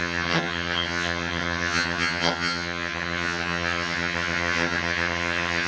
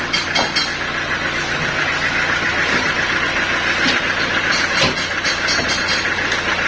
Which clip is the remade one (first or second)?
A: first